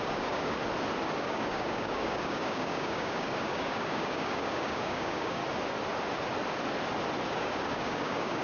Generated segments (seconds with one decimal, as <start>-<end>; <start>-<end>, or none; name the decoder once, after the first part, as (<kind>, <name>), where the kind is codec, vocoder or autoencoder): 0.0-0.6 (codec, DAC); 1.2-5.4; 7.3-8.4